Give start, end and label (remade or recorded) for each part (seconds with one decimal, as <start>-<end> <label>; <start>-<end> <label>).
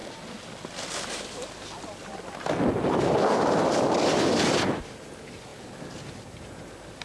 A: 0.0-5.5 recorded; 5.5-6.1 remade; 6.1-7.0 recorded